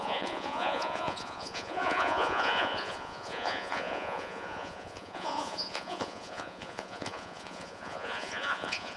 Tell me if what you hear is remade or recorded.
remade